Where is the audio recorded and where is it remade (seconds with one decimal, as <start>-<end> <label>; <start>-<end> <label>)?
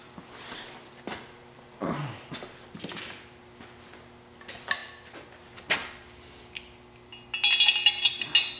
0.0-8.6 recorded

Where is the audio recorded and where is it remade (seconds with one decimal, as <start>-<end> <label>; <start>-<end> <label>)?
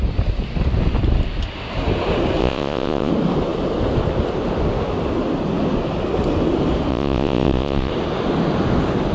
0.0-2.4 recorded; 2.4-3.1 remade; 3.1-6.9 recorded; 6.9-7.9 remade; 7.9-9.1 recorded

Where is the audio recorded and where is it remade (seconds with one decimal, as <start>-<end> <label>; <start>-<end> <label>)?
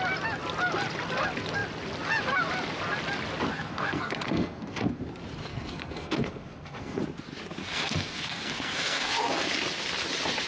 0.0-3.5 recorded; 3.5-5.0 remade; 5.0-5.5 recorded; 5.5-7.0 remade; 7.0-7.6 recorded; 7.6-9.5 remade; 9.5-10.5 recorded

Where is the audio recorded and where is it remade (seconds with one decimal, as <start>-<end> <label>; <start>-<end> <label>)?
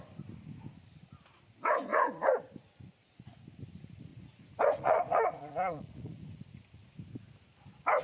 0.0-1.9 recorded; 1.9-2.4 remade; 2.4-4.1 recorded; 4.1-6.6 remade; 6.6-8.0 recorded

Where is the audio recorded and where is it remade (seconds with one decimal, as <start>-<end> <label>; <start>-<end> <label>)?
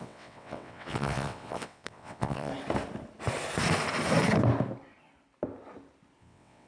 0.0-2.5 remade; 2.5-6.2 recorded; 6.2-6.7 remade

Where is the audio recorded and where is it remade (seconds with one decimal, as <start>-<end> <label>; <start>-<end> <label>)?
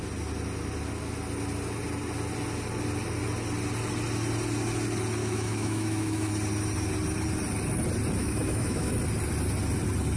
0.0-5.2 recorded; 5.2-6.3 remade; 6.3-8.2 recorded; 8.2-8.9 remade; 8.9-10.2 recorded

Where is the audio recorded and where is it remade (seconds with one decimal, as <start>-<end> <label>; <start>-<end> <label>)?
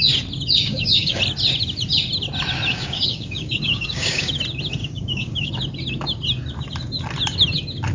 0.0-0.6 recorded; 0.6-1.2 remade; 1.2-2.7 recorded; 2.7-4.3 remade; 4.3-4.8 recorded; 4.8-5.5 remade; 5.5-7.9 recorded